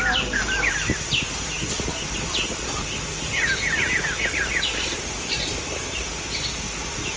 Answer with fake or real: real